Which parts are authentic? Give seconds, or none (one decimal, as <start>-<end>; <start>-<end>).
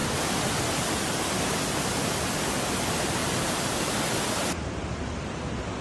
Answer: 0.0-3.2; 4.6-5.8